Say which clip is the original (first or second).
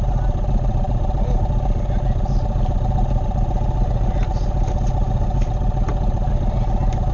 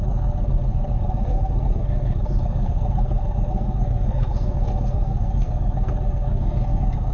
first